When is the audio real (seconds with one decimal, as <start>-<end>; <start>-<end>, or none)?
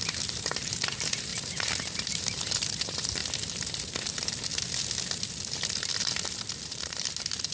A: 3.2-6.6